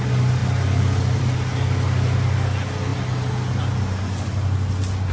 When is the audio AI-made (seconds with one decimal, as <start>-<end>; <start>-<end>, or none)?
none